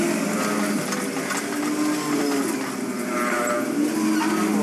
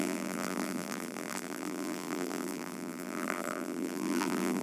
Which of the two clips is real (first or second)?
first